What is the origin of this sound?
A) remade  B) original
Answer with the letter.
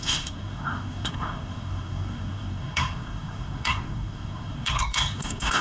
A